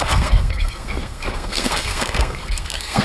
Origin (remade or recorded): remade